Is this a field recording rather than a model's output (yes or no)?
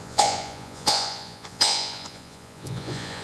no